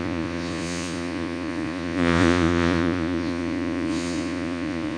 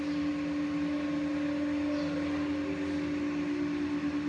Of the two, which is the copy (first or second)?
first